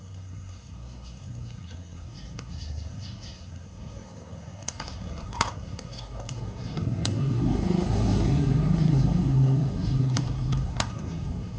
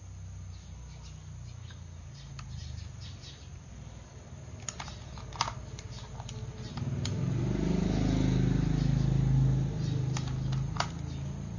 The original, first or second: second